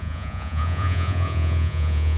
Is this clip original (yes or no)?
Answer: no